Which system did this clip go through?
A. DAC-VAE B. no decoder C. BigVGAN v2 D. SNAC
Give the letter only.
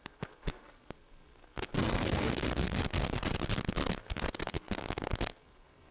D